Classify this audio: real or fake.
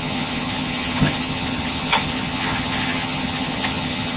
fake